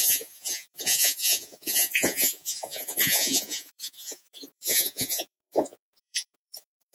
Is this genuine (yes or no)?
no